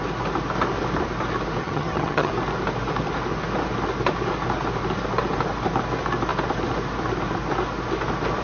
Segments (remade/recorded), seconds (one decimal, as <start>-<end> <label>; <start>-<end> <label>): 0.0-1.6 recorded; 1.6-2.3 remade; 2.3-8.4 recorded